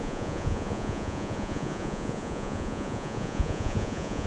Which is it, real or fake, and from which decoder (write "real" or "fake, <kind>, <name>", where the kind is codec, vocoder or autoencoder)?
fake, vocoder, Vocos